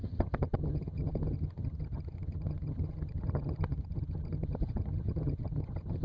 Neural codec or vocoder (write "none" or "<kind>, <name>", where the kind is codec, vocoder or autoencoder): vocoder, HiFi-GAN